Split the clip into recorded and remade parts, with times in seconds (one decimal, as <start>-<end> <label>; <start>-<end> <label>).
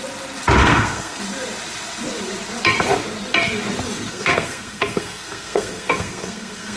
0.0-0.6 recorded; 0.6-1.2 remade; 1.2-4.1 recorded; 4.1-6.8 remade